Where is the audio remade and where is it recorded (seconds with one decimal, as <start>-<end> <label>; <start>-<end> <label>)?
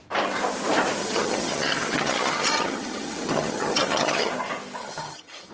0.0-1.0 recorded; 1.0-4.3 remade; 4.3-4.8 recorded; 4.8-5.5 remade